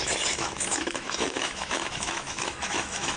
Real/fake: fake